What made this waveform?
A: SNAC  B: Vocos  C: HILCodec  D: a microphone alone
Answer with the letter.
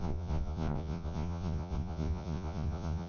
B